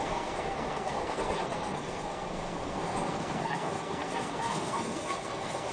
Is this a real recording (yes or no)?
no